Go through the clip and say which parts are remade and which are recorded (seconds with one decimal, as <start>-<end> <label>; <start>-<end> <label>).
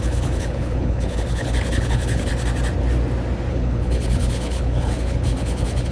0.0-2.3 remade; 2.3-3.5 recorded; 3.5-5.9 remade